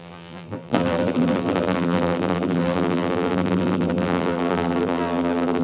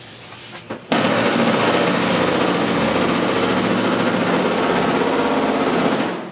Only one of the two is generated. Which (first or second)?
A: first